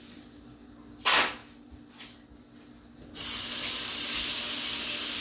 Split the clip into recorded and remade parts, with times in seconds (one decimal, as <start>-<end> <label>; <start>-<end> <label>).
0.0-5.2 recorded